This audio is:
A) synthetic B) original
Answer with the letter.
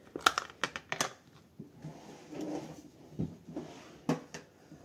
B